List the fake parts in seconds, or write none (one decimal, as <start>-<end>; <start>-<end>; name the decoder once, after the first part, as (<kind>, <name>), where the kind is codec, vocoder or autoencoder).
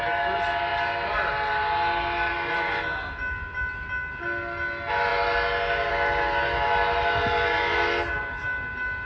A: none